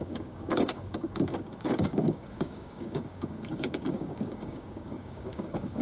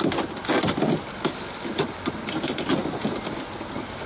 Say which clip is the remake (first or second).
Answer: first